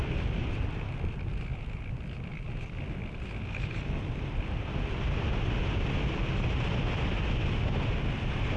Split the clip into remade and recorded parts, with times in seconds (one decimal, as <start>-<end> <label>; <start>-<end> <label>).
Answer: 0.0-8.6 recorded